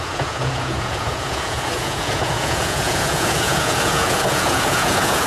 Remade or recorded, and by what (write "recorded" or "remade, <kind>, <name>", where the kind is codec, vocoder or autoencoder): remade, vocoder, Vocos